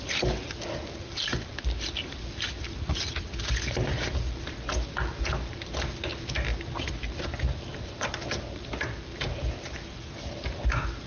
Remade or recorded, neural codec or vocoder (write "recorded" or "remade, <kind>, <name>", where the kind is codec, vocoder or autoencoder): recorded